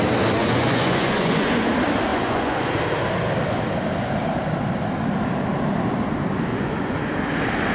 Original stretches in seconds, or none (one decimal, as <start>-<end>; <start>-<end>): 0.0-0.4; 1.7-2.1; 2.7-6.5; 7.1-7.7